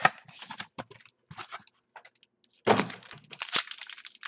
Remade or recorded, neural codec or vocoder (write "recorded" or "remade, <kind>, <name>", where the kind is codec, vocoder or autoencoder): recorded